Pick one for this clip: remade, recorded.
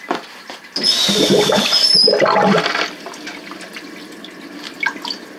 recorded